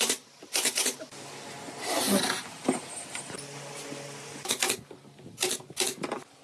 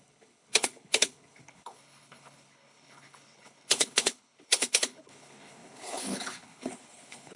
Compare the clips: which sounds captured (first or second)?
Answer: first